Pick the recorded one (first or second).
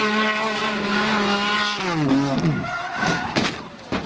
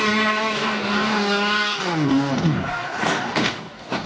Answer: first